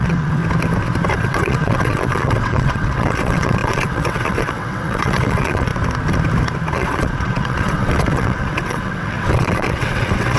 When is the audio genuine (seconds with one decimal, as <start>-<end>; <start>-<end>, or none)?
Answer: 0.4-1.1; 5.7-6.7